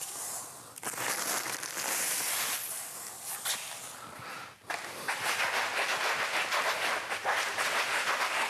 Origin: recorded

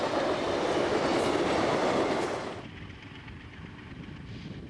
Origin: remade